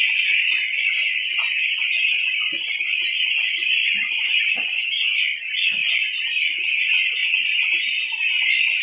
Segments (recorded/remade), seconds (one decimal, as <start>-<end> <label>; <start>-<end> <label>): 0.0-7.2 remade; 7.2-8.4 recorded; 8.4-8.8 remade